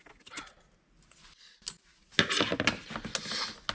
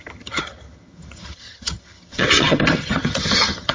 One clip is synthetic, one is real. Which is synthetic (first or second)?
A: second